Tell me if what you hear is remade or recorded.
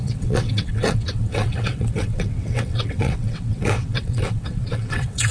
remade